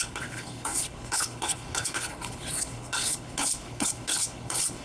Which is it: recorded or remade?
remade